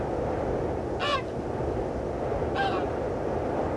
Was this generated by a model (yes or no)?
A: no